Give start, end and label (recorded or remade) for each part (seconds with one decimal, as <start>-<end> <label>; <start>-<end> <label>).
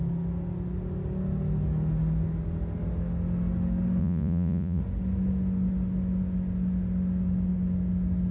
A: 0.0-4.0 recorded; 4.0-4.8 remade; 4.8-8.3 recorded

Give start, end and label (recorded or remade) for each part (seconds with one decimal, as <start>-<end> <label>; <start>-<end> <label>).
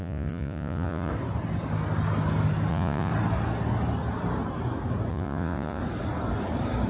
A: 0.0-1.1 remade; 1.1-2.7 recorded; 2.7-3.1 remade; 3.1-5.1 recorded; 5.1-5.8 remade; 5.8-6.9 recorded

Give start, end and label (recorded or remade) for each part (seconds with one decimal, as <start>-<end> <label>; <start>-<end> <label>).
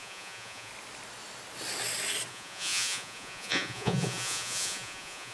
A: 0.0-0.7 remade; 0.7-2.3 recorded; 2.3-5.3 remade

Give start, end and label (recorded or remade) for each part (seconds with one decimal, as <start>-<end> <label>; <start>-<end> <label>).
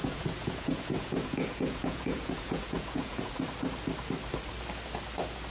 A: 0.0-3.3 remade; 3.3-5.5 recorded